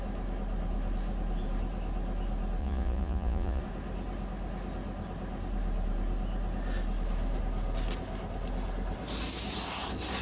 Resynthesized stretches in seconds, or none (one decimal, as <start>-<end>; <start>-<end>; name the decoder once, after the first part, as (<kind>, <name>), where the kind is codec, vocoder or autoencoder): 2.6-3.6 (vocoder, Vocos)